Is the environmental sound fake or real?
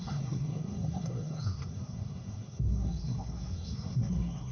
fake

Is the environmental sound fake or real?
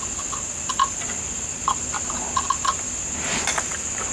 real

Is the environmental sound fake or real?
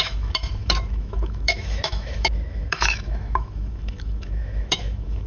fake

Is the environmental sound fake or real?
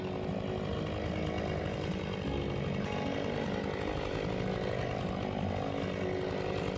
real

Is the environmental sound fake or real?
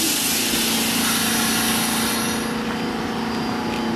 real